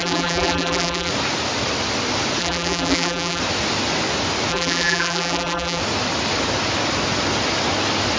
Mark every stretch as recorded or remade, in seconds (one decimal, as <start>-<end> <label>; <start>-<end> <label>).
0.0-1.1 remade; 1.1-2.4 recorded; 2.4-3.4 remade; 3.4-4.5 recorded; 4.5-5.8 remade; 5.8-8.2 recorded